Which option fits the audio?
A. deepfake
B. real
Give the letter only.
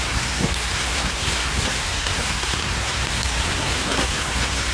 A